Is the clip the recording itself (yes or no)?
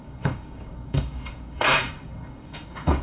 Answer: no